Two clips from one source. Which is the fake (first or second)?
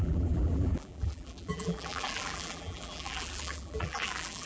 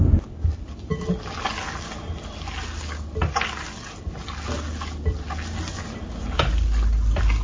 first